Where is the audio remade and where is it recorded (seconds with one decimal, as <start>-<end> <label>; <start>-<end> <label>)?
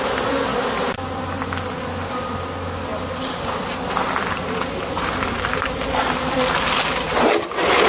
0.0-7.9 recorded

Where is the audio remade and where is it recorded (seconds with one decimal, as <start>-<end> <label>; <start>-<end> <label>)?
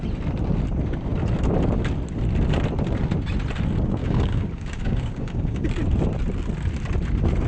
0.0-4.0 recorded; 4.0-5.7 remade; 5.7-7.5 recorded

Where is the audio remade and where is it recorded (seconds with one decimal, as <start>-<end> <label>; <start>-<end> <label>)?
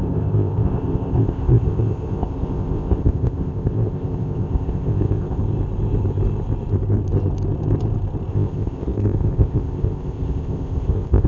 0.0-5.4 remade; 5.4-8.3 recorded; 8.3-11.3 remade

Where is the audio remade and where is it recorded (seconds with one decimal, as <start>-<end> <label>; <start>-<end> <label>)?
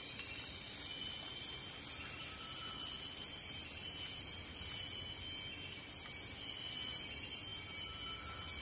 0.0-8.6 recorded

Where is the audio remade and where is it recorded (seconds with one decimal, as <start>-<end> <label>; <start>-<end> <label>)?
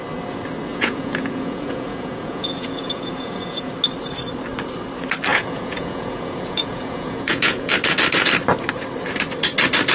0.0-0.7 recorded; 0.7-3.7 remade; 3.7-5.3 recorded; 5.3-7.7 remade; 7.7-9.9 recorded